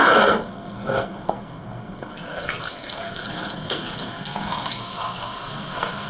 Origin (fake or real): fake